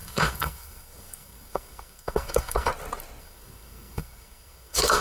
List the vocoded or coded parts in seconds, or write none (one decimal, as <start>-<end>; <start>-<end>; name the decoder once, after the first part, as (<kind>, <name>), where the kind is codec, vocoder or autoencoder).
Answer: 0.0-2.7 (codec, SNAC); 3.2-5.0